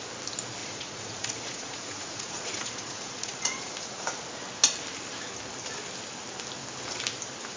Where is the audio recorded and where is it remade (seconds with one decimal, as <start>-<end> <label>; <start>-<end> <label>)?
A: 0.0-0.6 recorded; 0.6-4.1 remade; 4.1-7.6 recorded